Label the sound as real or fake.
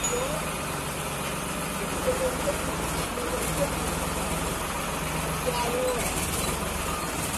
real